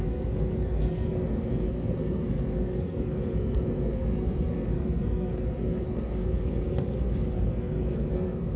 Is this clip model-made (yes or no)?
yes